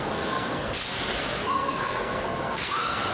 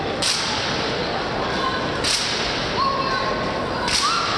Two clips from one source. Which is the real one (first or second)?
second